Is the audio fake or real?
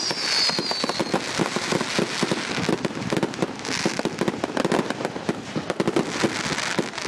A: real